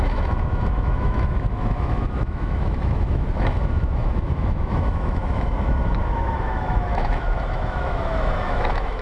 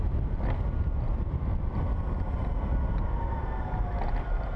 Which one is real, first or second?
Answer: second